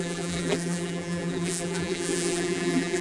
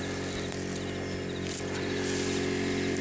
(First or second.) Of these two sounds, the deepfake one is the first